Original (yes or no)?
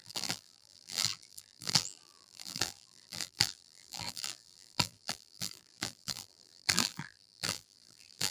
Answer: no